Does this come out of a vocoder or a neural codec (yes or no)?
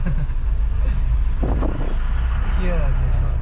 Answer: no